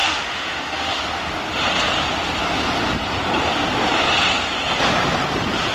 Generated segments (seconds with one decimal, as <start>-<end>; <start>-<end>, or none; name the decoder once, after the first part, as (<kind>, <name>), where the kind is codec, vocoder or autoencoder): 0.0-1.0 (autoencoder, DAC-VAE)